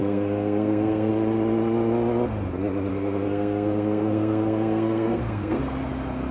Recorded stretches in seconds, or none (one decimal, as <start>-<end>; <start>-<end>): 1.1-2.9; 5.6-6.3